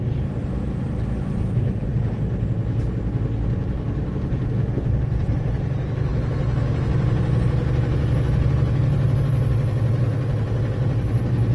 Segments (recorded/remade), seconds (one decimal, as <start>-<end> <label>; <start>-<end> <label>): 0.0-1.9 remade; 1.9-5.2 recorded; 5.2-6.1 remade; 6.1-9.2 recorded; 9.2-11.5 remade